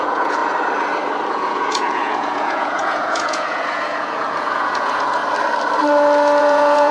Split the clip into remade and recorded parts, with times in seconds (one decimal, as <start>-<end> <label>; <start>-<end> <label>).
0.0-0.4 remade; 0.4-1.3 recorded; 1.3-5.2 remade; 5.2-6.4 recorded; 6.4-6.9 remade